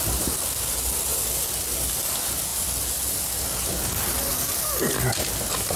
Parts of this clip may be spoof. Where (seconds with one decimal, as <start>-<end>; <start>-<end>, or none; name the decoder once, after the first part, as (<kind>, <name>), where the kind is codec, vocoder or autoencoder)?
none